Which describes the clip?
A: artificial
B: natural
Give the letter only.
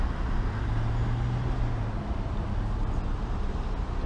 B